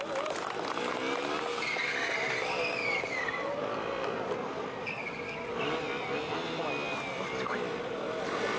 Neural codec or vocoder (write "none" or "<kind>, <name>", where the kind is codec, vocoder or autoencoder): none